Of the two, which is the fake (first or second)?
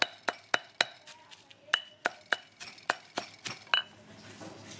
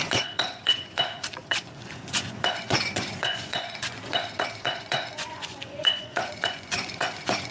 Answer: second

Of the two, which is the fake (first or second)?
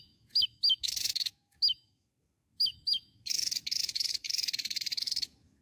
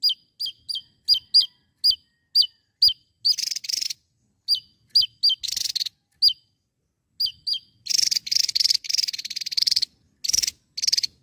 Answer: first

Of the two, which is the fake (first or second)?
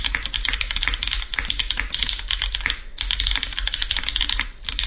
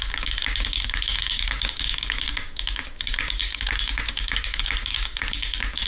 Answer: second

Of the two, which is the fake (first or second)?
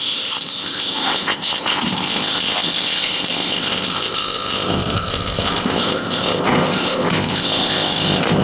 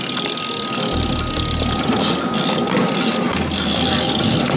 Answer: first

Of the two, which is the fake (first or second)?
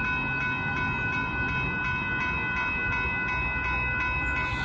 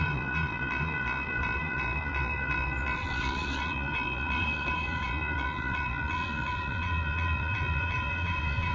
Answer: second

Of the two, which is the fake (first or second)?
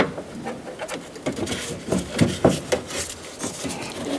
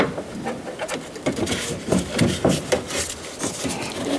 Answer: second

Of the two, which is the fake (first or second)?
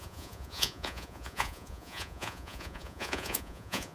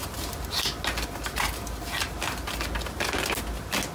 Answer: first